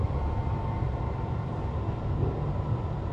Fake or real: real